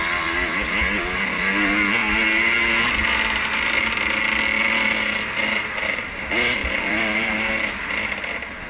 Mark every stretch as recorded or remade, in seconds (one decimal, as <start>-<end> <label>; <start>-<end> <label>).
0.0-6.6 recorded; 6.6-7.5 remade; 7.5-8.7 recorded